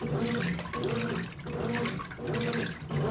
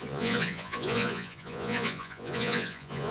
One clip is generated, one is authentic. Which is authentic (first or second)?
first